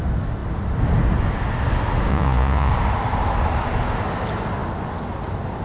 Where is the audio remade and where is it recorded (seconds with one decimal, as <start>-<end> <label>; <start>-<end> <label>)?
0.0-2.1 recorded; 2.1-2.7 remade; 2.7-5.6 recorded